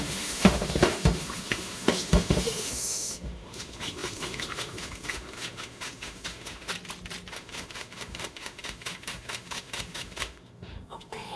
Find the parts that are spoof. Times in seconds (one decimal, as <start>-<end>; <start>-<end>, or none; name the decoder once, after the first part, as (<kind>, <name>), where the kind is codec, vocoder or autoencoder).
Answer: 0.0-6.7 (autoencoder, DAC-VAE); 7.3-11.4